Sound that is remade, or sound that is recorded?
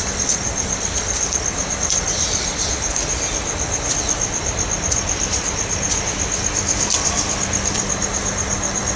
remade